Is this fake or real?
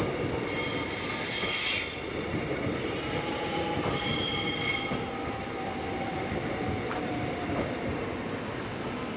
real